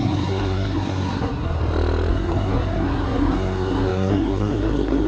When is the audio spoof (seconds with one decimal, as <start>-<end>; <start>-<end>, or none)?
0.0-1.6; 2.1-5.1